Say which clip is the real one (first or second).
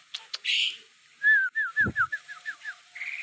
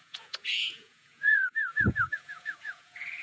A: first